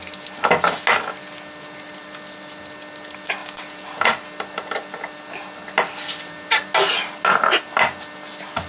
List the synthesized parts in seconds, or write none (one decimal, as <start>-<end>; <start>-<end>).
none